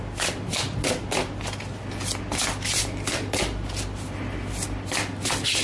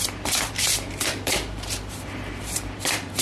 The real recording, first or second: first